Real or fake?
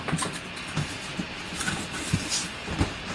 real